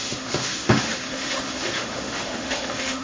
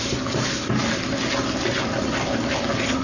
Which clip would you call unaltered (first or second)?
second